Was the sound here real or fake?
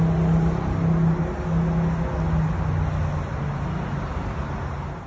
real